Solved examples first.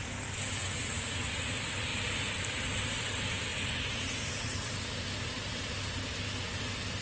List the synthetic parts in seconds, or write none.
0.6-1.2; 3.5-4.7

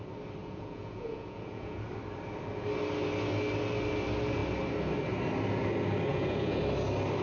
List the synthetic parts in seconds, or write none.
0.4-1.9; 6.1-6.6

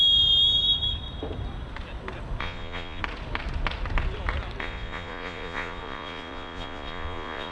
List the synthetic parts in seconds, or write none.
2.4-3.0; 4.6-7.5